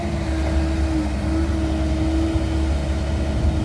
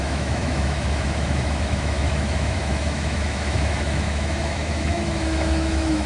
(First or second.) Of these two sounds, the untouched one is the first